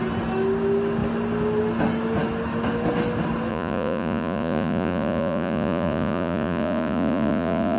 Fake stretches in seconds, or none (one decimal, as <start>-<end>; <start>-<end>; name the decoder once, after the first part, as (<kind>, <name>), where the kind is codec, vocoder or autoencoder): 3.5-7.8 (vocoder, Vocos)